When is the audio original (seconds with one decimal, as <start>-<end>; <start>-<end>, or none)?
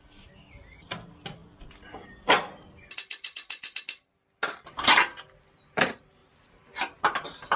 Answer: 0.0-7.6